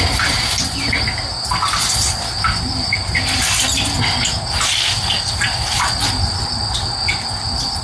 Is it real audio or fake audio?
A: real